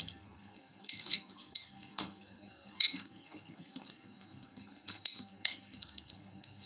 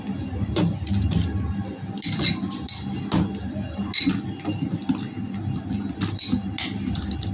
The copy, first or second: first